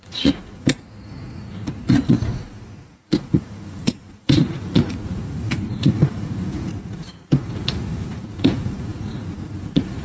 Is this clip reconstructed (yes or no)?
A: yes